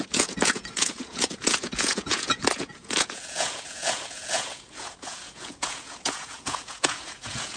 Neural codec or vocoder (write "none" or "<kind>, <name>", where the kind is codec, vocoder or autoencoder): vocoder, Vocos